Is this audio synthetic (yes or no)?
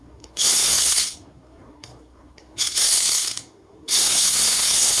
yes